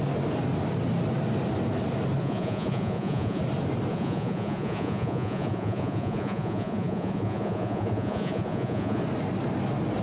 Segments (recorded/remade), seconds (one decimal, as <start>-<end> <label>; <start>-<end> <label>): 0.0-2.2 recorded; 2.2-3.4 remade; 3.4-3.9 recorded; 3.9-9.0 remade; 9.0-10.0 recorded